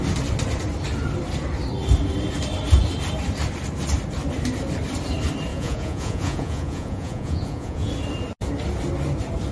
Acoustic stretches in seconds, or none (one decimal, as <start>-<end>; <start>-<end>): 0.0-5.5; 7.9-9.5